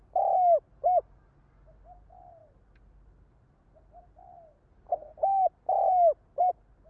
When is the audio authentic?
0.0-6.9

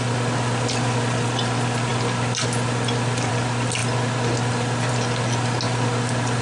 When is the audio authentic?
0.0-6.4